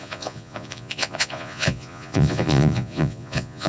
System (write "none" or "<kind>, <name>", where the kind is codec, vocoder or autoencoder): vocoder, Vocos